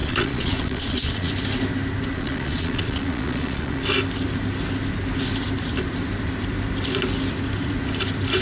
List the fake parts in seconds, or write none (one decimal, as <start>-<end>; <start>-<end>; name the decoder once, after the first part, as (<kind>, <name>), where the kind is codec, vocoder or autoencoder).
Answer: 0.0-1.3 (vocoder, Vocos); 2.1-3.8